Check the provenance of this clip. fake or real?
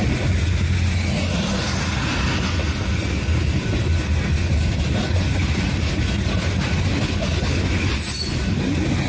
real